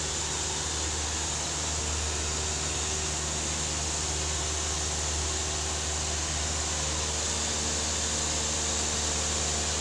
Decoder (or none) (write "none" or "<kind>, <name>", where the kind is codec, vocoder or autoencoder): none